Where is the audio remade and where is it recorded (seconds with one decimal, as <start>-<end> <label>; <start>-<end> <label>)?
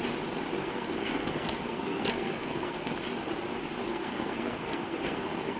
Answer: 0.0-0.6 recorded; 0.6-2.9 remade; 2.9-3.9 recorded; 3.9-5.6 remade